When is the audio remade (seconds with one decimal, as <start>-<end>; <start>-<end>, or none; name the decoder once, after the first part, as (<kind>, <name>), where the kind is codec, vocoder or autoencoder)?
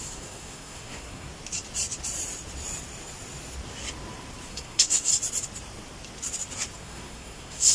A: 0.0-1.3 (codec, SNAC); 4.5-5.1; 6.8-7.7